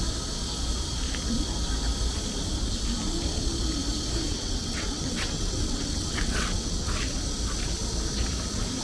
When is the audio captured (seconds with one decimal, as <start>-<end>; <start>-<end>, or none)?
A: 0.0-4.3; 6.9-8.8

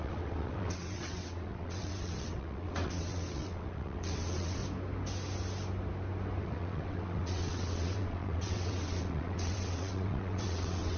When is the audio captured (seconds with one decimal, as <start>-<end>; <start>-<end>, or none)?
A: 4.6-6.4

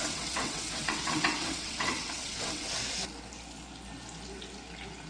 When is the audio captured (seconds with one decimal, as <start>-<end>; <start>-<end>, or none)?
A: 2.8-5.1

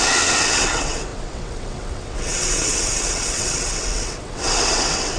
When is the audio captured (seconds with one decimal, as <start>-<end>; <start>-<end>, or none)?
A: none

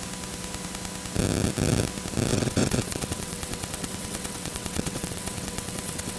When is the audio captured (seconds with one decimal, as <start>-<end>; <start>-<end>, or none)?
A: 0.0-2.3

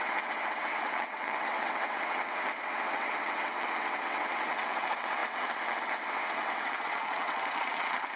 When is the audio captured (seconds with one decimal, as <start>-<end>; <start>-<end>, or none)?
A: none